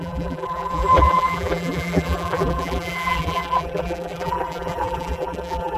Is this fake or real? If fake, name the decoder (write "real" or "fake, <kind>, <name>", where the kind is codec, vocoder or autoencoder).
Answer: fake, vocoder, BigVGAN v2